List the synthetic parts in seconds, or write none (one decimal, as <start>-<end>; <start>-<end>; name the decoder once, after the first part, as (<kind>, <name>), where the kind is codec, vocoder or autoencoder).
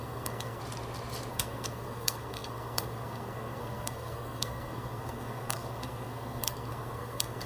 0.0-0.6 (codec, SNAC); 1.3-7.5